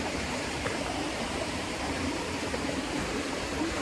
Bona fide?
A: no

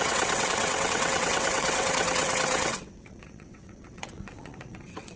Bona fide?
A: no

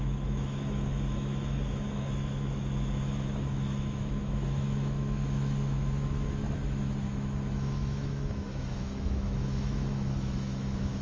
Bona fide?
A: no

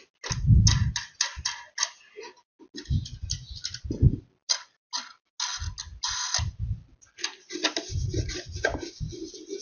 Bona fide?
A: yes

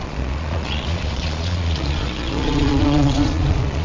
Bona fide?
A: no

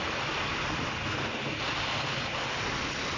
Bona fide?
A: yes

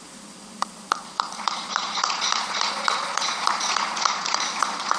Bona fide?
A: no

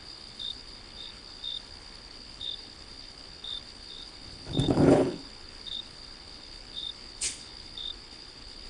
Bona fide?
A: no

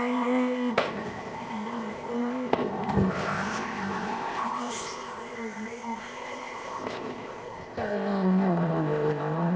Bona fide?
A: no